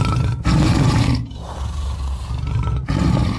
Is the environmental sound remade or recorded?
remade